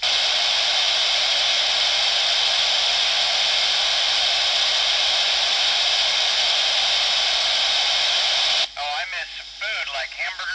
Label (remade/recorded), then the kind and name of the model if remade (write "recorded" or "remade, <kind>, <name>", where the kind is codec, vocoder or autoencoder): recorded